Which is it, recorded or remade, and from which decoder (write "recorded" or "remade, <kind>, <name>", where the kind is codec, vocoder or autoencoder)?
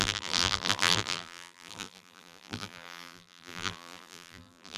remade, vocoder, BigVGAN v2